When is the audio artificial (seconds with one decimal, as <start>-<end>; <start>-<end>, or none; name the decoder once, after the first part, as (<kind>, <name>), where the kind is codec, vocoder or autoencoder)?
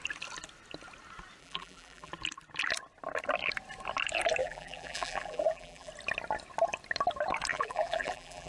1.4-2.1 (vocoder, BigVGAN v2); 4.4-5.9; 7.5-8.5